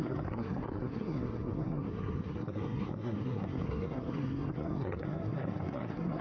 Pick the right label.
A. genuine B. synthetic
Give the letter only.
B